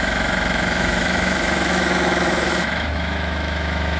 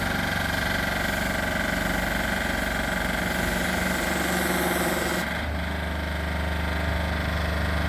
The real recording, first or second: second